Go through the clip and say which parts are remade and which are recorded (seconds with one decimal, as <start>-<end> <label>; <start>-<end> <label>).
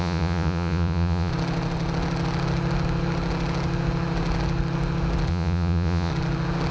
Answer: 0.0-1.3 remade; 1.3-5.3 recorded; 5.3-6.1 remade; 6.1-6.7 recorded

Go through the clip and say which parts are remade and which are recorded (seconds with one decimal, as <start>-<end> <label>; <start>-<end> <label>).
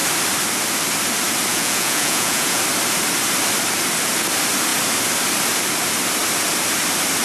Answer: 0.0-1.5 recorded; 1.5-2.6 remade; 2.6-7.2 recorded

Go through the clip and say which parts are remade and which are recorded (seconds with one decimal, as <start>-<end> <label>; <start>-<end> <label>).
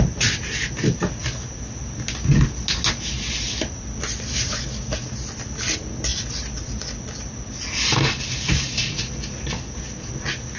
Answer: 0.0-10.6 recorded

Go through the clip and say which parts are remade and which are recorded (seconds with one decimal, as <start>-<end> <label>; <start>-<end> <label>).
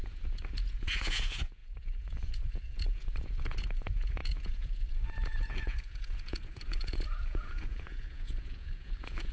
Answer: 0.0-9.3 remade